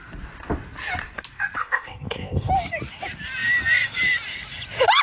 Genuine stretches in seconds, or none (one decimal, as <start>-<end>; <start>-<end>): 0.0-1.6; 2.5-5.0